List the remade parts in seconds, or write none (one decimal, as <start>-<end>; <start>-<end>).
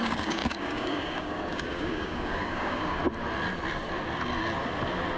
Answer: 0.0-3.0